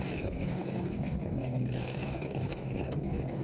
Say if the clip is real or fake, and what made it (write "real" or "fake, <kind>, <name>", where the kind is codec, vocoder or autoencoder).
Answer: fake, codec, DAC